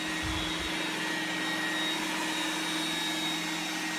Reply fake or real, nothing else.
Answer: real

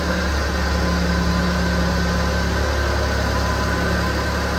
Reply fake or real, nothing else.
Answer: real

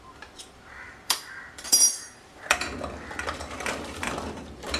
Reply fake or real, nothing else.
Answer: fake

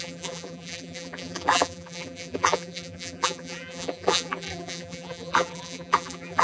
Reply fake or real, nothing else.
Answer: fake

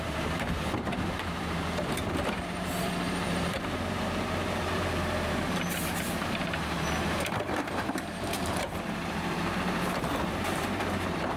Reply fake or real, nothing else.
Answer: fake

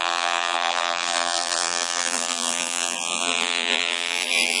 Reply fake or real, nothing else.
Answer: fake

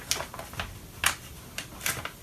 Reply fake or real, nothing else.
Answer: real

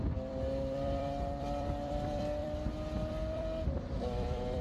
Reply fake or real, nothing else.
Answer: fake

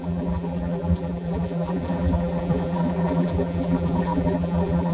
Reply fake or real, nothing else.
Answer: fake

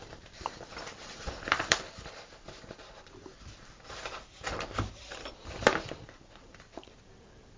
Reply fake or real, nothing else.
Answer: fake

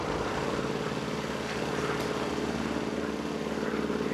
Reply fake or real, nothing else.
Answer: real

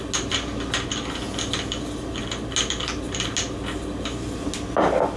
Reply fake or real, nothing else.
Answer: real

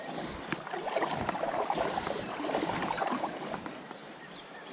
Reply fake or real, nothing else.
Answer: fake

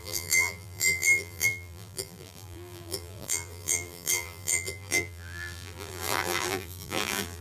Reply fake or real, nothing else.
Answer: fake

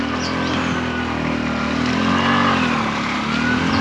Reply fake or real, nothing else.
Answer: real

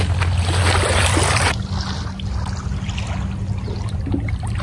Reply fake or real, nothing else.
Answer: real